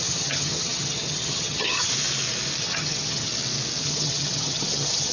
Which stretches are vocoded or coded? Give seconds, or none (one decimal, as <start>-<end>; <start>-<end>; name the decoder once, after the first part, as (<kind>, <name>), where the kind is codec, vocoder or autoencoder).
0.0-1.9 (vocoder, HiFi-GAN); 2.6-3.3; 3.8-5.1